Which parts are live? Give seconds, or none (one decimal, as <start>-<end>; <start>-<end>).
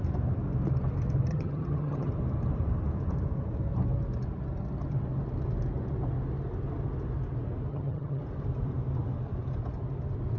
0.0-1.3; 2.1-7.7; 8.2-10.4